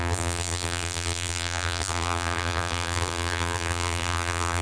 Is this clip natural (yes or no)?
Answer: no